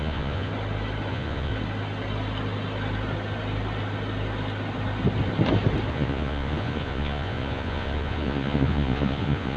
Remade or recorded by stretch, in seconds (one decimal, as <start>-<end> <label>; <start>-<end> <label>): 0.0-0.5 remade; 0.5-1.1 recorded; 1.1-1.5 remade; 1.5-5.9 recorded; 5.9-9.6 remade